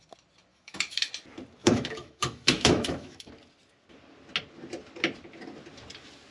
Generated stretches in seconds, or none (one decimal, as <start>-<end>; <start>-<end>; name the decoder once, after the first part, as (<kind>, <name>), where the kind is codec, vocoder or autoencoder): 0.5-1.1 (autoencoder, DAC-VAE); 1.6-3.3